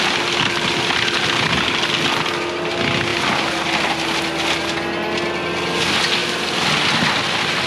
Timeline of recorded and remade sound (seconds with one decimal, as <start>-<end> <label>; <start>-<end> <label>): 0.0-7.7 recorded